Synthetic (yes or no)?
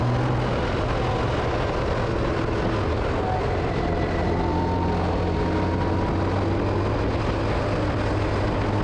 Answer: no